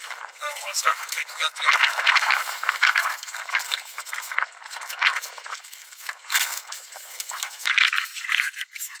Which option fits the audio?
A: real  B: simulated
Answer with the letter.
B